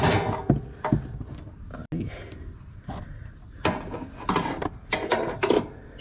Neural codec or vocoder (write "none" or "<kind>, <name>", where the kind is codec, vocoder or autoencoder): none